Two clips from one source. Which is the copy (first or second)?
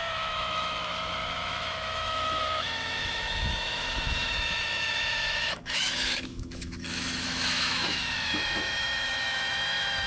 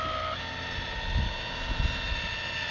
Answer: first